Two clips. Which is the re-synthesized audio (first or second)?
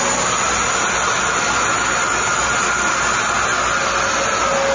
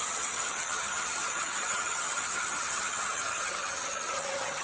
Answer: second